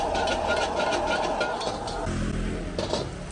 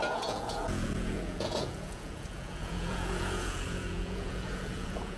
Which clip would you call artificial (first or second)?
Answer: second